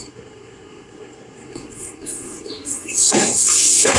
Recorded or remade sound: remade